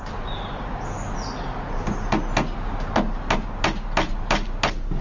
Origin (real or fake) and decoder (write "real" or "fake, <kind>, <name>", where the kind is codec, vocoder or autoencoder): real